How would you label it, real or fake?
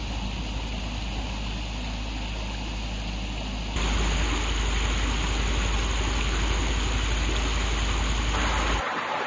real